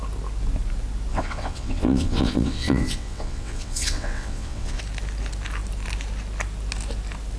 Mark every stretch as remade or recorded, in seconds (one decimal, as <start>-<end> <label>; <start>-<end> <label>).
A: 0.0-1.1 recorded; 1.1-4.8 remade; 4.8-7.4 recorded